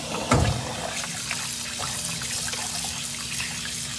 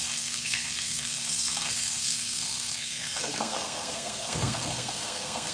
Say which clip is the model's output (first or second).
second